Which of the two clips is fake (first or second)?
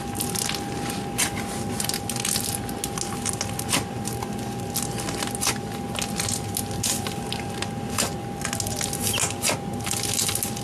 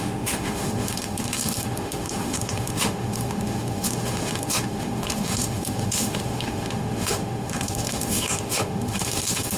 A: second